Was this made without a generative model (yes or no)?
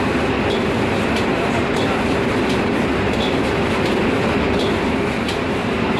yes